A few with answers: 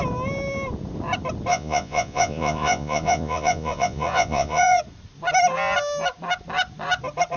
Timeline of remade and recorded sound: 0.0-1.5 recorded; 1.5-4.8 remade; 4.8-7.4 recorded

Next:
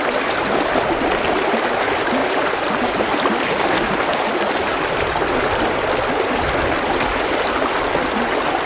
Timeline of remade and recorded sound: 0.0-8.7 recorded

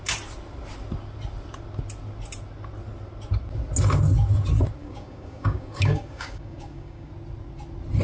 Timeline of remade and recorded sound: 0.0-4.8 recorded; 4.8-7.1 remade; 7.1-8.0 recorded

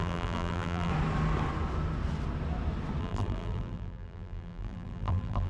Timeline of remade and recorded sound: 0.0-0.9 remade; 0.9-3.0 recorded; 3.0-5.5 remade